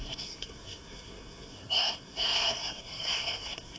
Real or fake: fake